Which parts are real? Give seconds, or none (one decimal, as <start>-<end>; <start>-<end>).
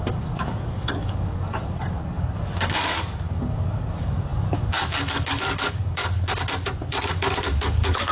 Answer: 6.0-6.9